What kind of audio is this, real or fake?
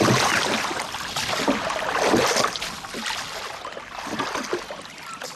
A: real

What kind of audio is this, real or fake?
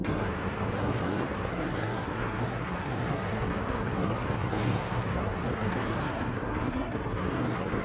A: fake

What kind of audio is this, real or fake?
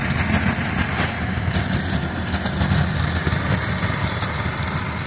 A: real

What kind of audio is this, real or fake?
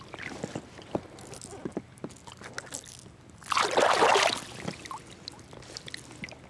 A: real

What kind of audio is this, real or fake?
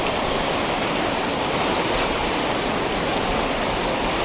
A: real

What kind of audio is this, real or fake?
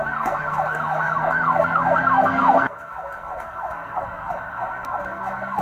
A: fake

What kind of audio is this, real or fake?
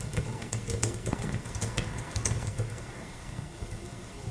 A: fake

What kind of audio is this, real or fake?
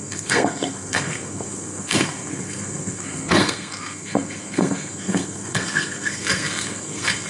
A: fake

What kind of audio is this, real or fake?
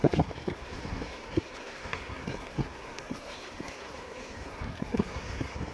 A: fake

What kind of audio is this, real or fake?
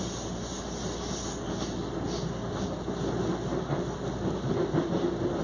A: real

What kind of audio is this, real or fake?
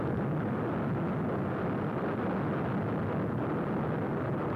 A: real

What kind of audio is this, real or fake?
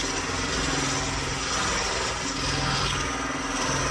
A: real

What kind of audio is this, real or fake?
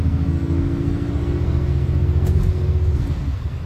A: fake